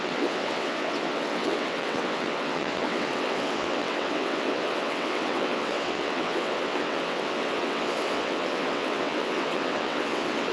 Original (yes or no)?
no